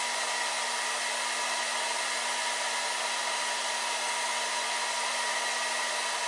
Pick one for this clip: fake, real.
real